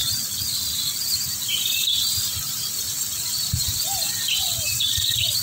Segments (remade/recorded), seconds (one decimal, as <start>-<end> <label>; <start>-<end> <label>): 0.0-3.2 recorded; 3.2-5.4 remade